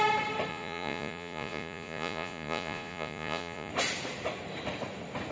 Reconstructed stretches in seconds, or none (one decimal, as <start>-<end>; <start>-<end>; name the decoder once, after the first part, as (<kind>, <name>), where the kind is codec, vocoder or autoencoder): 0.5-3.7 (vocoder, Vocos)